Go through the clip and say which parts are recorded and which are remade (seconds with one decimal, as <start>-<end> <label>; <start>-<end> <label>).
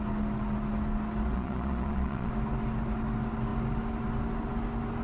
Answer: 0.0-1.3 recorded; 1.3-2.3 remade; 2.3-5.0 recorded